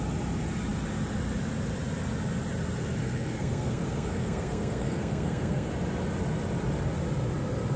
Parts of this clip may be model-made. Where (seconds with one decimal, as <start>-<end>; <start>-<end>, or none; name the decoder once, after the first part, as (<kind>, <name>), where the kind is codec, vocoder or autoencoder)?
3.0-5.7 (codec, SNAC)